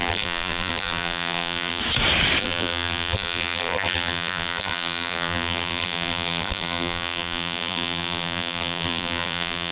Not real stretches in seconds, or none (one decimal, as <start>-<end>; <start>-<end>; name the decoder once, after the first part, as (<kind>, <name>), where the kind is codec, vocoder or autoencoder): 0.0-1.8 (vocoder, BigVGAN v2); 2.4-9.7